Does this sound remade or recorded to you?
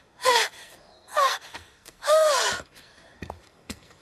remade